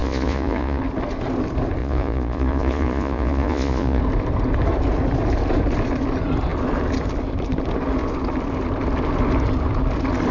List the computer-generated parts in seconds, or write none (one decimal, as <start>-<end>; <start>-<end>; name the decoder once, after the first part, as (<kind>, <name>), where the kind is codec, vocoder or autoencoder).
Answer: 0.0-0.8 (vocoder, Vocos); 1.8-4.0